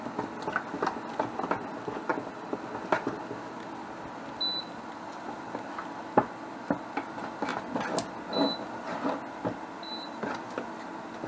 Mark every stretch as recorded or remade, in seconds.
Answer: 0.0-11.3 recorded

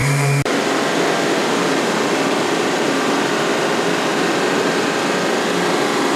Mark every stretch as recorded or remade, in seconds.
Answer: 0.0-0.8 remade; 0.8-1.4 recorded; 1.4-3.3 remade; 3.3-4.1 recorded; 4.1-5.2 remade; 5.2-6.2 recorded